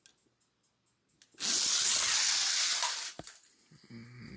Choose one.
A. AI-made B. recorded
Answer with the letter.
B